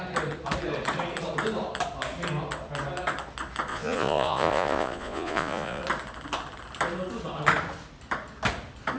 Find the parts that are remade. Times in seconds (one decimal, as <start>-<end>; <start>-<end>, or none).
3.7-5.8